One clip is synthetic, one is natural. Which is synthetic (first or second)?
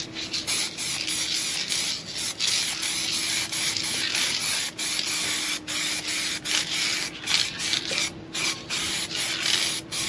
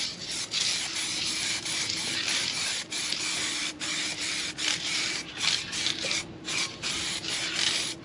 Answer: second